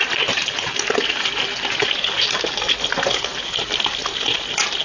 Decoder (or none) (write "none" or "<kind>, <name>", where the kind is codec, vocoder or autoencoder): none